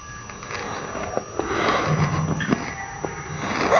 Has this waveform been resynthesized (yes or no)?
no